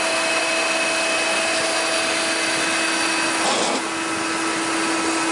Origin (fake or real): real